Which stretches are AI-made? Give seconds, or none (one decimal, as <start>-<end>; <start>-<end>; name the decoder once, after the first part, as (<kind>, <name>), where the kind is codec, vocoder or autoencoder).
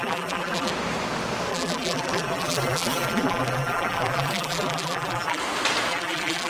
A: 0.0-0.7 (vocoder, BigVGAN v2); 1.5-5.4; 5.9-6.5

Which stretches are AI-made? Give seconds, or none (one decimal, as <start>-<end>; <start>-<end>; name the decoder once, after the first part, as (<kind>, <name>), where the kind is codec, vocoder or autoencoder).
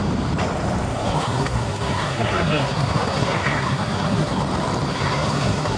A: 0.9-4.4 (codec, SNAC); 4.9-5.8